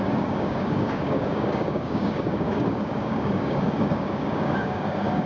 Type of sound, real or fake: fake